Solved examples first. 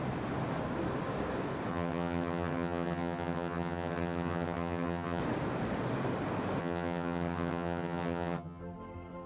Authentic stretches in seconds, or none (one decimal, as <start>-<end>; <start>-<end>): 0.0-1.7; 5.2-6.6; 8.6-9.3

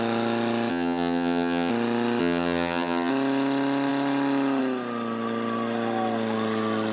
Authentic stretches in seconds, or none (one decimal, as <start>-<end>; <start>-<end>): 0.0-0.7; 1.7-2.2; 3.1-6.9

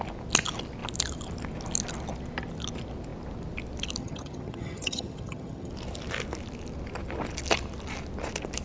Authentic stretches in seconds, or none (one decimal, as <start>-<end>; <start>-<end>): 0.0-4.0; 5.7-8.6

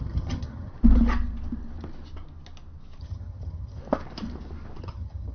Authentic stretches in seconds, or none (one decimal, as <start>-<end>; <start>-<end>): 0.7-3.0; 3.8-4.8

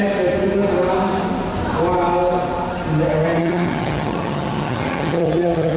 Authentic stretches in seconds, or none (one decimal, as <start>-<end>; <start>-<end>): 0.0-3.4

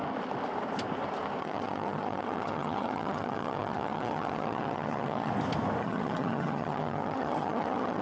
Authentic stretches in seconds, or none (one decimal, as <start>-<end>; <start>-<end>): 0.0-1.4; 5.3-5.8

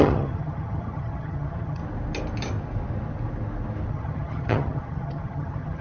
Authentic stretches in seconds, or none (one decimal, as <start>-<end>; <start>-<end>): 1.8-3.9